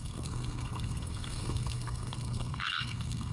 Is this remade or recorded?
remade